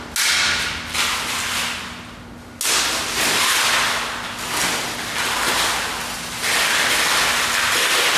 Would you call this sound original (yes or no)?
yes